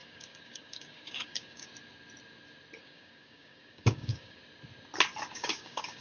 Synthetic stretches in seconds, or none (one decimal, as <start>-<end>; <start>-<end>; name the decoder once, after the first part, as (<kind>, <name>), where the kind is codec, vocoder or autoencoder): 0.0-1.7 (codec, DAC); 2.8-4.4; 5.3-6.0